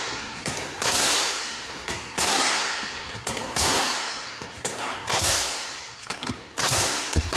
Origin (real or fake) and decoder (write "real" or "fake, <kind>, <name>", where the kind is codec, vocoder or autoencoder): fake, codec, SNAC